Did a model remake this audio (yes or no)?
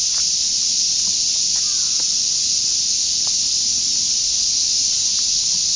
no